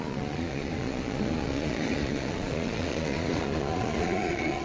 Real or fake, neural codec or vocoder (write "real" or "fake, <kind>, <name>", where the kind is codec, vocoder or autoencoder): fake, vocoder, Vocos